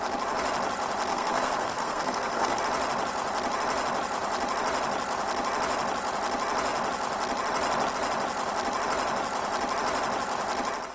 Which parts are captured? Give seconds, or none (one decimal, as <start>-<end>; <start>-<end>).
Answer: 0.0-1.1; 2.6-10.9